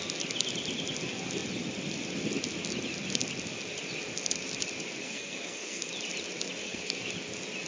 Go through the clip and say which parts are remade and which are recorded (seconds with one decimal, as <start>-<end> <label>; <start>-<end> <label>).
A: 0.0-5.0 recorded; 5.0-5.9 remade; 5.9-6.6 recorded; 6.6-7.1 remade; 7.1-7.7 recorded